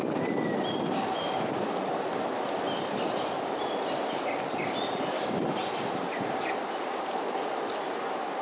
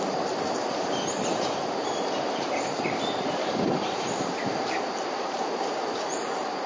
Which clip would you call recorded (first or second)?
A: first